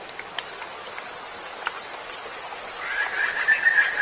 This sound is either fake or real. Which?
real